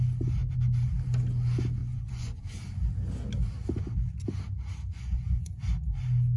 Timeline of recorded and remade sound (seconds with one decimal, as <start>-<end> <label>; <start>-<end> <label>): 0.0-1.8 recorded; 1.8-2.4 remade; 2.4-4.9 recorded; 4.9-5.6 remade; 5.6-6.4 recorded